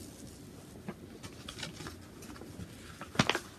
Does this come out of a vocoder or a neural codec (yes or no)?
no